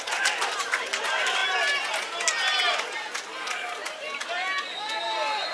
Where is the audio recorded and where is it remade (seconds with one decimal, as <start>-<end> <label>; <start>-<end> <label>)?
0.0-5.5 recorded